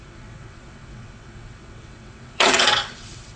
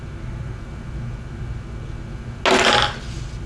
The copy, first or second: first